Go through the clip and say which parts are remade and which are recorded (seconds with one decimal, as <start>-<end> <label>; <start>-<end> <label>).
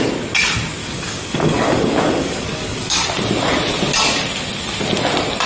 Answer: 0.0-0.8 recorded; 0.8-3.0 remade; 3.0-5.5 recorded